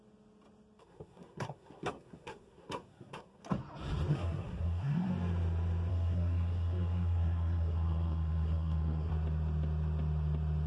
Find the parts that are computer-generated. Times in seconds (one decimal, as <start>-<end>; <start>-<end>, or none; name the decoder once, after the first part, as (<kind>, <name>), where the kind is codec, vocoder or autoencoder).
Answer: 0.8-3.4 (codec, SNAC); 4.1-5.1; 5.9-9.1